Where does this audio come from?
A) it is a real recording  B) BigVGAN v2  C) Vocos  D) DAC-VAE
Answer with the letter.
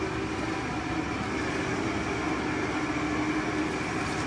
A